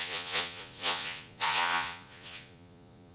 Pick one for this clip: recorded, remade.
remade